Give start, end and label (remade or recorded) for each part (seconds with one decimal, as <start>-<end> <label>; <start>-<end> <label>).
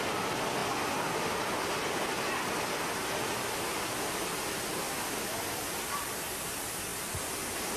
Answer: 0.0-6.9 recorded; 6.9-7.8 remade